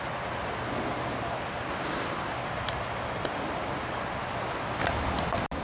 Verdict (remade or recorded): recorded